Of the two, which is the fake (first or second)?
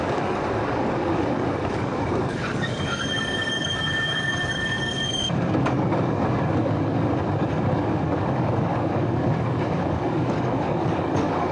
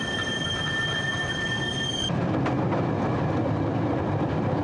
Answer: first